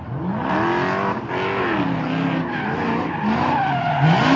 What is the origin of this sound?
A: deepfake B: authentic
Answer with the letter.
B